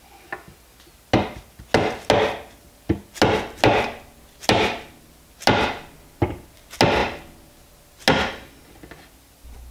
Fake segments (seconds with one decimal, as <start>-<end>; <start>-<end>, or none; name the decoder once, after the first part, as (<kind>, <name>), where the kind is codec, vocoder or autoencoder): none